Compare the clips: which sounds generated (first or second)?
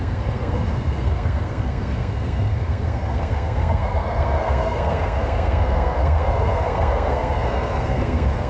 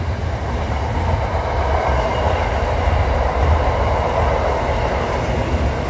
first